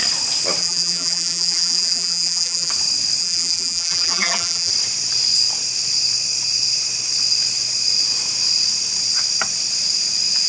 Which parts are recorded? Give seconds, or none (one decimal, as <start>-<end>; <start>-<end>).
0.0-0.6; 2.7-3.2; 4.7-10.5